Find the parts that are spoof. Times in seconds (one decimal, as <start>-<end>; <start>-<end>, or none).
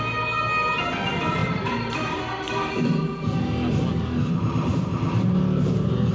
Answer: 1.4-2.2; 4.7-5.3